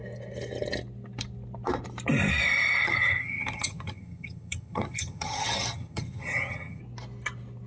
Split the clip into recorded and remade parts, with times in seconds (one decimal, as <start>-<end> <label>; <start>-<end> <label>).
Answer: 0.0-2.8 recorded; 2.8-6.8 remade; 6.8-7.7 recorded